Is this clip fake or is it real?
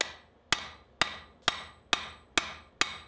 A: real